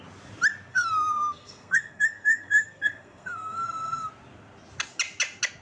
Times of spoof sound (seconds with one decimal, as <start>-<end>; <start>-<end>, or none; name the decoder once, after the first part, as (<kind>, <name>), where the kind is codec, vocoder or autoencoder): 0.7-4.1 (codec, SNAC)